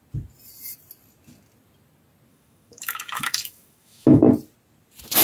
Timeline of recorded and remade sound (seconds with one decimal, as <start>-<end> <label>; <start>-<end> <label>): 0.0-2.3 recorded; 2.3-4.2 remade; 4.2-5.2 recorded